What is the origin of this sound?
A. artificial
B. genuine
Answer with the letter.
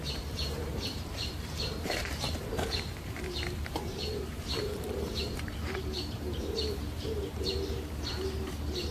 A